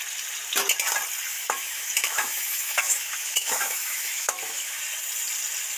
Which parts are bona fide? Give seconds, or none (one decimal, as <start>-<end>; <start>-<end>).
0.0-1.3; 4.8-5.8